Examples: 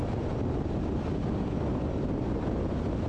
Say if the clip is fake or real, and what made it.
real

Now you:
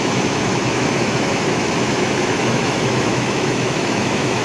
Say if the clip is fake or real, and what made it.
fake, autoencoder, DAC-VAE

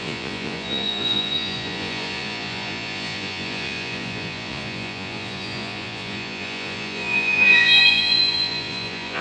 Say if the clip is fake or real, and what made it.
fake, vocoder, Vocos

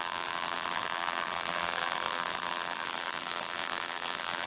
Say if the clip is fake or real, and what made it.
fake, vocoder, BigVGAN v2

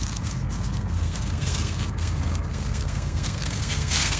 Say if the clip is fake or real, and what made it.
fake, codec, SNAC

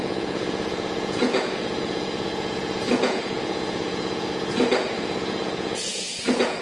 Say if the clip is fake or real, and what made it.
fake, vocoder, Vocos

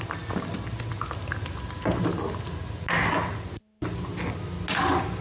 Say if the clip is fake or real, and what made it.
real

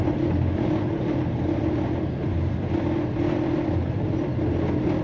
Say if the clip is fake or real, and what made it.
fake, vocoder, BigVGAN v2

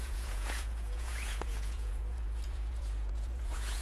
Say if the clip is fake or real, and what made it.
fake, vocoder, Vocos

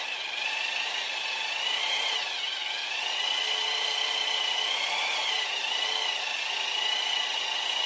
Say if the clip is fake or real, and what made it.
real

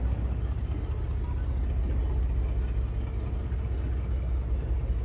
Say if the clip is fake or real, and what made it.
real